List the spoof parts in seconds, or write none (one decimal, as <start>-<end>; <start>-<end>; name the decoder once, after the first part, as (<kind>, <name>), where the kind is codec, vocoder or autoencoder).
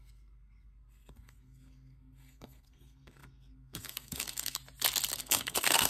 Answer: 0.0-4.6 (codec, SNAC); 5.2-5.9